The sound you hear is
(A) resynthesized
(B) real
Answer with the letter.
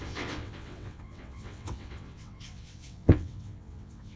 A